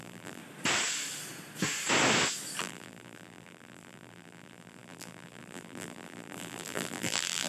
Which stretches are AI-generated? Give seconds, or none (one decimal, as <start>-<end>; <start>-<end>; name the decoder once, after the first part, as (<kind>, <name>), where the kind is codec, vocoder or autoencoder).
0.0-0.4 (vocoder, BigVGAN v2); 2.6-7.5